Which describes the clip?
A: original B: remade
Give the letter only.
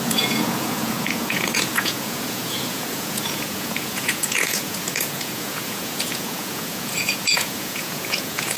B